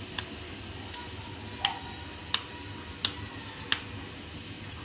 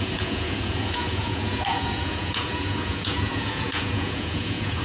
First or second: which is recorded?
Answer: first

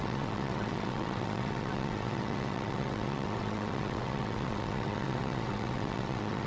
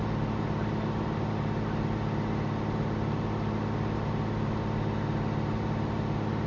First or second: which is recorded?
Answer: second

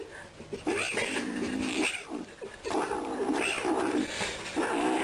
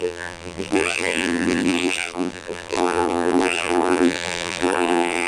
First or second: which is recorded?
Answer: first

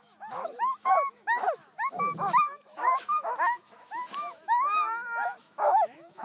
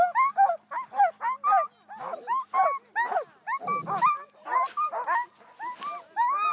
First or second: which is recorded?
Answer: second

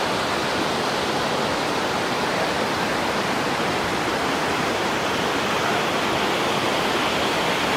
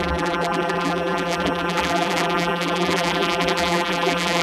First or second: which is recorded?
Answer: first